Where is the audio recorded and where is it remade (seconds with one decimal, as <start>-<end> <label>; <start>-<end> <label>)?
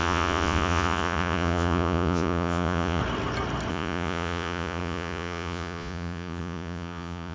0.0-3.0 remade; 3.0-3.7 recorded; 3.7-7.3 remade